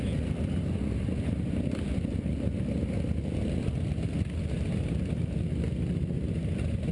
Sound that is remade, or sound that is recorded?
recorded